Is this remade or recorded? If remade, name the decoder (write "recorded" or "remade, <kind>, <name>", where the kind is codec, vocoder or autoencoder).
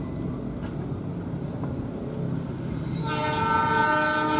recorded